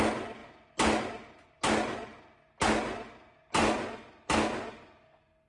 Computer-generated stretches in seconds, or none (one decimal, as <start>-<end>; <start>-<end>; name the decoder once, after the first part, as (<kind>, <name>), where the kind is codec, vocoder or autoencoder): none